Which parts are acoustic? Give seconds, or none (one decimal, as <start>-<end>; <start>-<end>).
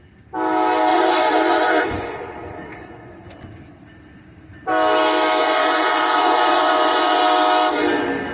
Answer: 0.0-0.9; 3.3-5.4; 7.2-8.3